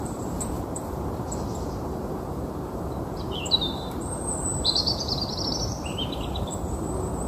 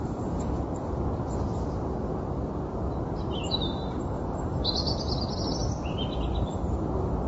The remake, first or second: first